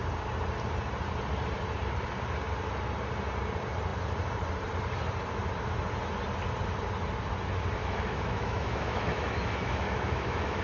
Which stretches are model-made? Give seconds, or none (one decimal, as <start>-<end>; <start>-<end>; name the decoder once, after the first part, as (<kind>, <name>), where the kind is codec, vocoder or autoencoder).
7.8-10.6 (autoencoder, DAC-VAE)